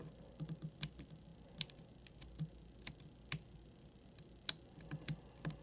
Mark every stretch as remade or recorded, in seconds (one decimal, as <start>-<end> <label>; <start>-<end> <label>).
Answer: 0.0-5.6 recorded